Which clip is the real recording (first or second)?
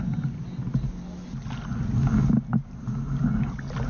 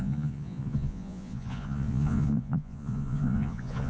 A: first